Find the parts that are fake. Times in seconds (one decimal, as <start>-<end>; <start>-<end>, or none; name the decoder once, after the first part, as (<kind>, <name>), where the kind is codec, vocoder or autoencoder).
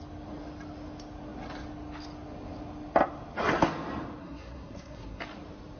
4.2-5.2 (codec, SNAC)